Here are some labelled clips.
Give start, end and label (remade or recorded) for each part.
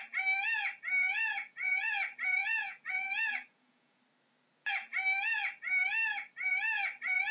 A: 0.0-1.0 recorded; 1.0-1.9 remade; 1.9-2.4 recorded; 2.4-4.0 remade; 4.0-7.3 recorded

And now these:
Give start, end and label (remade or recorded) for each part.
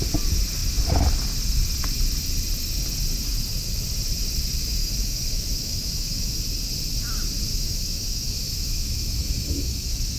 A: 0.0-4.8 recorded; 4.8-6.4 remade; 6.4-7.5 recorded; 7.5-10.2 remade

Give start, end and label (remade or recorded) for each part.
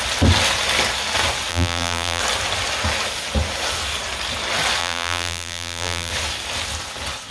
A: 0.0-1.5 recorded; 1.5-2.2 remade; 2.2-4.8 recorded; 4.8-6.1 remade; 6.1-7.3 recorded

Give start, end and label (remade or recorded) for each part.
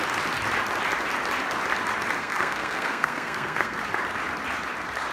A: 0.0-2.2 recorded; 2.2-3.8 remade; 3.8-5.1 recorded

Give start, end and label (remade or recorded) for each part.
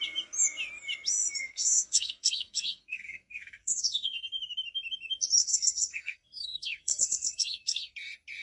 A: 0.0-1.4 recorded; 1.4-4.3 remade; 4.3-5.4 recorded; 5.4-7.9 remade; 7.9-8.4 recorded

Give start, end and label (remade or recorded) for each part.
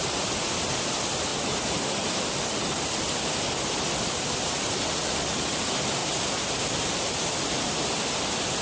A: 0.0-8.6 recorded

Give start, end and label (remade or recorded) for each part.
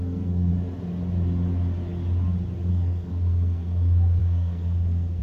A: 0.0-0.5 remade; 0.5-2.7 recorded; 2.7-5.2 remade